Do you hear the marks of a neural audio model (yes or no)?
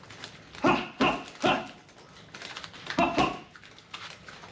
no